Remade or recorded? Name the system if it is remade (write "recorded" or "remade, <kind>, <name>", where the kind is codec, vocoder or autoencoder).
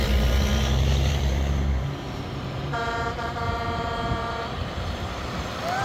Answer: remade, vocoder, BigVGAN v2